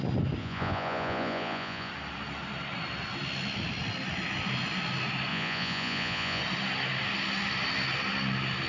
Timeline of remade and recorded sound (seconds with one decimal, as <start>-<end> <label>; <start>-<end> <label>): 0.0-0.4 recorded; 0.4-1.9 remade; 1.9-5.3 recorded; 5.3-6.4 remade; 6.4-8.7 recorded